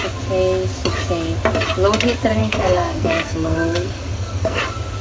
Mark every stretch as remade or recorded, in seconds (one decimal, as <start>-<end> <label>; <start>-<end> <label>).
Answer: 0.0-2.4 recorded; 2.4-4.6 remade; 4.6-5.0 recorded